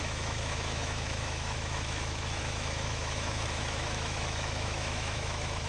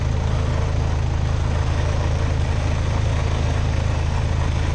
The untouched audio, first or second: second